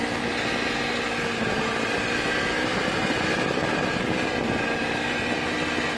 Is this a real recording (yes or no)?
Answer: yes